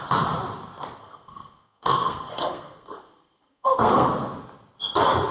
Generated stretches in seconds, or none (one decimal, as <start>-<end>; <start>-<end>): 1.0-4.1